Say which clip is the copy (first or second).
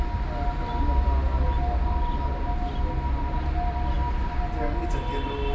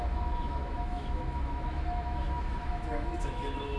second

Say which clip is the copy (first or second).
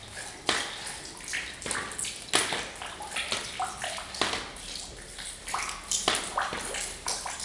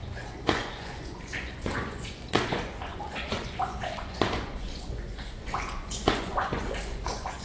second